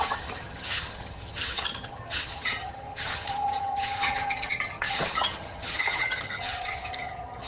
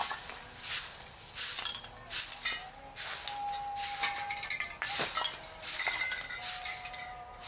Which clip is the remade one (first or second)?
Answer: first